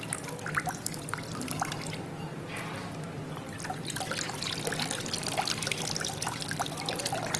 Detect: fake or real real